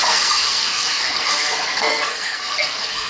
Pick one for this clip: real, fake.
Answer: fake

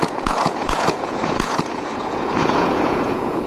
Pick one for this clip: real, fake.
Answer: fake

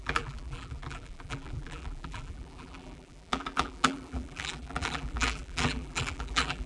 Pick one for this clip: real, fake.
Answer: fake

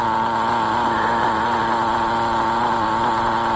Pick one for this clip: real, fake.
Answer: real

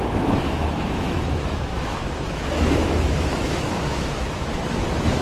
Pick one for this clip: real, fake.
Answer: fake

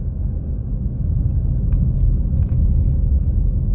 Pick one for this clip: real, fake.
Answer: fake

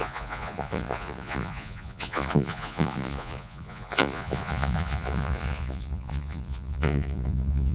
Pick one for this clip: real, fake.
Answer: fake